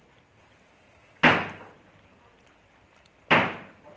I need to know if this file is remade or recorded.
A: recorded